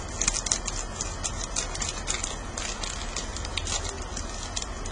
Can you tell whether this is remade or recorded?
recorded